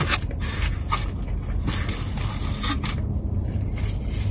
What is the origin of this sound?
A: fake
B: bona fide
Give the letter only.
B